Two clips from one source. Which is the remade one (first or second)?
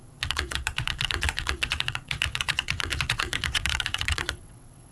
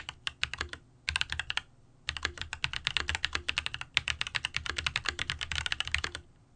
first